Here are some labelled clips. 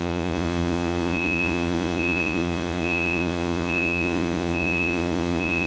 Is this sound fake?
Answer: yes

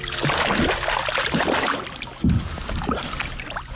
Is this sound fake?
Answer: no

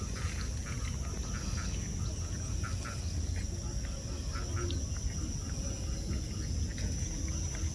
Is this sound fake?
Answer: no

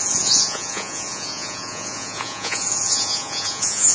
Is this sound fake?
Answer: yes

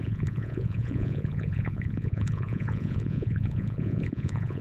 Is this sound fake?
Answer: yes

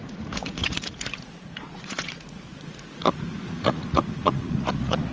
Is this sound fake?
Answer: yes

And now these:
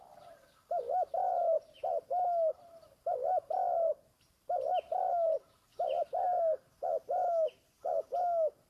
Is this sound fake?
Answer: no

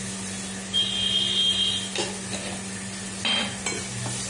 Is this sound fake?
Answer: no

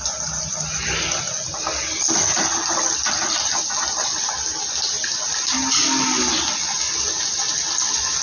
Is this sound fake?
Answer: no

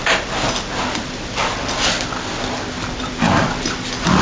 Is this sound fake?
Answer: no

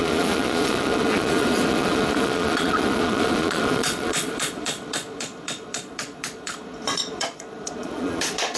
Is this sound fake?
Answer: yes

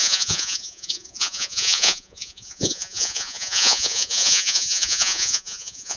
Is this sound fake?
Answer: yes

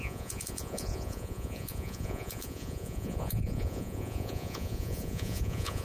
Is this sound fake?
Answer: yes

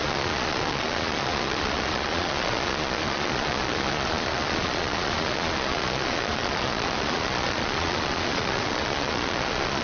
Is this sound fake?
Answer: yes